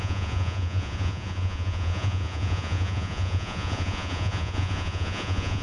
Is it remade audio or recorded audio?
remade